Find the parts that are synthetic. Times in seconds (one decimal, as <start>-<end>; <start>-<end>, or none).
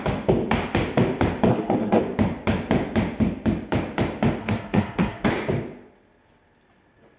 1.5-2.0; 4.4-5.3